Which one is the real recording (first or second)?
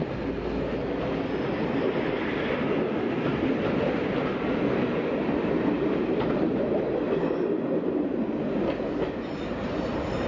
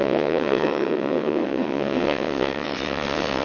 first